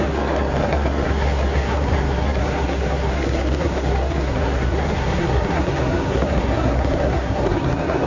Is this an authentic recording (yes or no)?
no